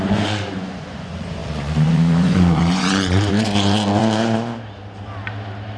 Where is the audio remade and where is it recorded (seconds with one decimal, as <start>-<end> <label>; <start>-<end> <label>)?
0.0-4.0 remade; 4.0-5.8 recorded

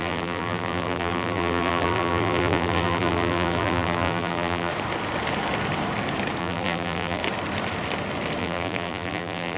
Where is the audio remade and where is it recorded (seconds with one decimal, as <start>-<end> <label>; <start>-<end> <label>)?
0.0-4.7 remade; 4.7-6.4 recorded; 6.4-7.2 remade; 7.2-8.4 recorded; 8.4-9.6 remade

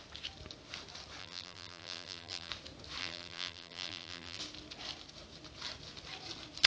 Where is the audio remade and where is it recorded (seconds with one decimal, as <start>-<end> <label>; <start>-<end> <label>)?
0.0-1.2 recorded; 1.2-2.5 remade; 2.5-3.0 recorded; 3.0-4.4 remade; 4.4-6.7 recorded